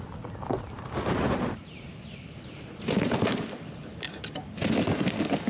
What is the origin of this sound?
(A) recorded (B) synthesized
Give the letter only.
A